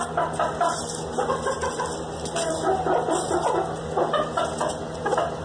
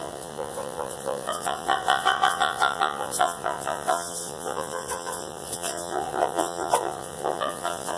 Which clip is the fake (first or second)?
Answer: second